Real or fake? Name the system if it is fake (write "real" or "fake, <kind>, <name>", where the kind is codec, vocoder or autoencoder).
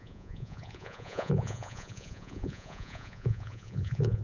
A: fake, vocoder, Vocos